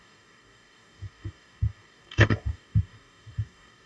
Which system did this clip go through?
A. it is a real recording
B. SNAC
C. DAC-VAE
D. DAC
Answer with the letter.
D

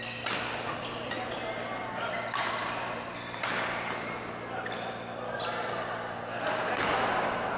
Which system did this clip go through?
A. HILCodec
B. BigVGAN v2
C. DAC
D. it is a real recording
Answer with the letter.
D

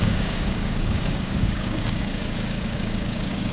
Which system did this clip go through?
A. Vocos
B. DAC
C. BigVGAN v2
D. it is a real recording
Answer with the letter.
B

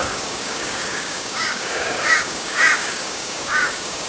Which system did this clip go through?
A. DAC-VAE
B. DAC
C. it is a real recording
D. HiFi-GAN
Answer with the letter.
B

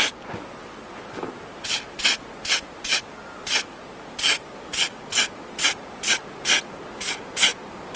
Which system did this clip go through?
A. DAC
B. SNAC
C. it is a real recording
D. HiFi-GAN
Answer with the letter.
C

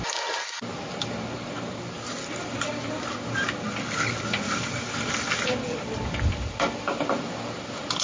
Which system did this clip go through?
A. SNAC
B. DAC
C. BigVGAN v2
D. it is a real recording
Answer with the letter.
D